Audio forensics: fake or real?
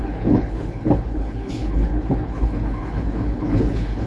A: fake